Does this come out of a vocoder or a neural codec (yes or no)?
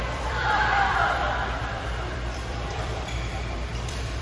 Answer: yes